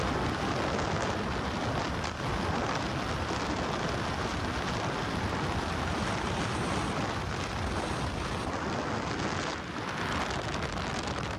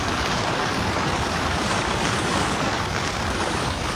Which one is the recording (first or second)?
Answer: first